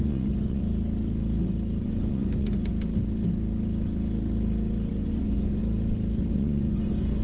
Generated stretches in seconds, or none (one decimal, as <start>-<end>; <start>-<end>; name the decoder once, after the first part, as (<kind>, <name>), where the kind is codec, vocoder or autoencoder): 0.0-0.6 (vocoder, Vocos); 1.8-2.7; 4.9-5.6; 6.3-7.2